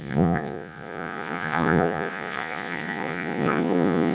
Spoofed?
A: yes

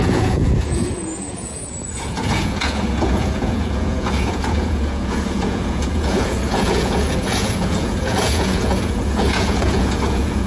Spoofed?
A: yes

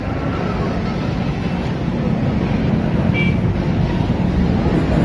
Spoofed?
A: no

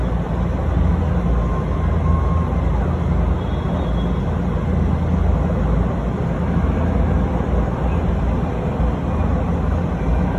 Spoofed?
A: no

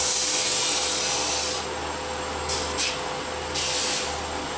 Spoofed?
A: no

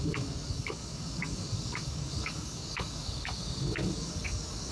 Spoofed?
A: yes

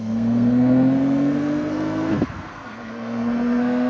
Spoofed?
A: yes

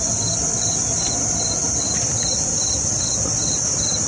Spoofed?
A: no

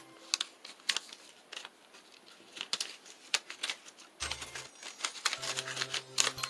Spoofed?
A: no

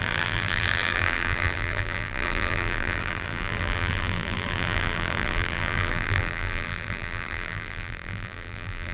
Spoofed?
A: yes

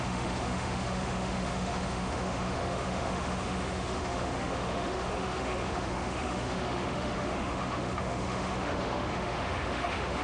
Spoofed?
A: yes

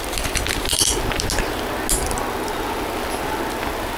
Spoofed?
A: no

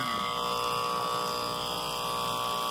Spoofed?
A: no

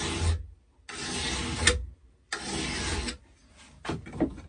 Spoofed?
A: no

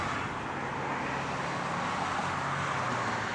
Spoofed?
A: no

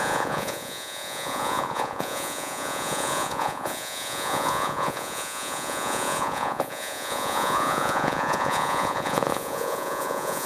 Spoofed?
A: yes